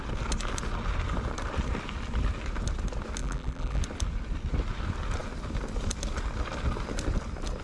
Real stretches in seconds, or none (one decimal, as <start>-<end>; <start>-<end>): 0.0-3.2; 3.8-7.6